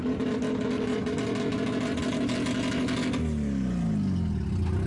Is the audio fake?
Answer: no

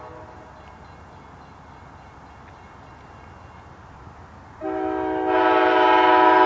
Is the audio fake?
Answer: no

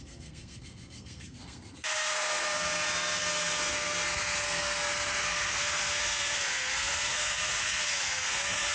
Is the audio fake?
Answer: yes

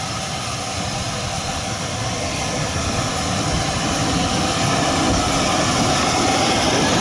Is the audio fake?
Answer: yes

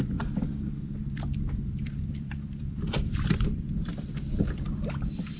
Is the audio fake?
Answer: yes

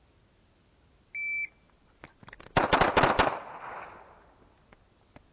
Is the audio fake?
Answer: no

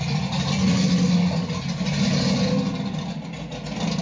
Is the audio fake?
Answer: no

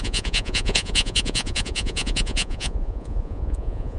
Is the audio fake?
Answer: yes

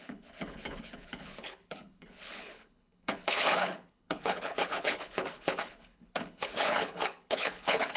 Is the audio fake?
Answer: yes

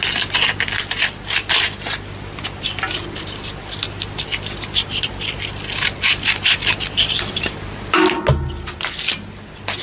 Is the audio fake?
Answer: no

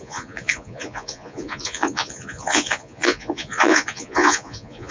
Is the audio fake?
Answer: yes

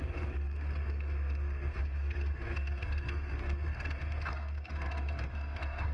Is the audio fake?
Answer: yes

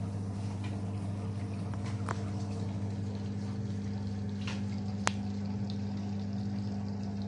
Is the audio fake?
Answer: no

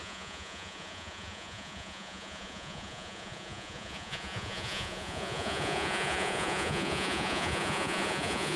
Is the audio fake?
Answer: yes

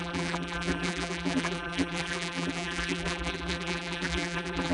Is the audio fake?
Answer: yes